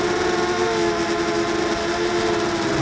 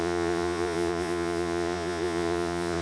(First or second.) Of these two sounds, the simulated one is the second